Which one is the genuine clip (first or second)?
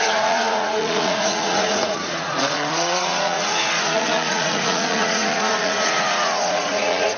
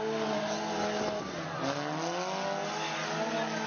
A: second